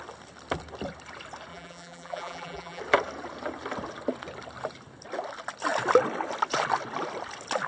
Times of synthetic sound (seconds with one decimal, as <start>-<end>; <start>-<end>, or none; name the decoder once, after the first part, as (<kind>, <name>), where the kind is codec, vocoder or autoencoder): 1.5-2.8 (vocoder, BigVGAN v2)